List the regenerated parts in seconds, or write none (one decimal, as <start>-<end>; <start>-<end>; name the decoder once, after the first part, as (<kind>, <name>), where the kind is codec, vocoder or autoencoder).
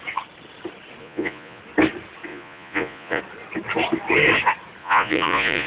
1.0-1.6 (vocoder, Vocos); 2.3-3.2; 4.8-5.7